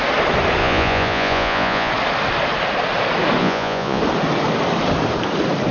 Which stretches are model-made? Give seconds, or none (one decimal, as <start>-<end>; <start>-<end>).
0.6-1.9; 3.4-4.0